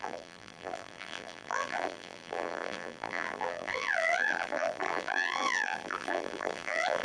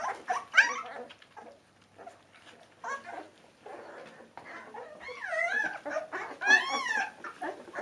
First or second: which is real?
second